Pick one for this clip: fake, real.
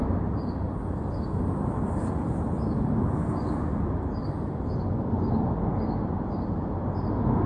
real